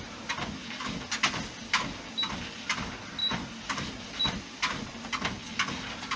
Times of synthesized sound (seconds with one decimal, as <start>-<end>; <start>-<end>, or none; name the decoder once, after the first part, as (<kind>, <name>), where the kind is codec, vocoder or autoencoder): none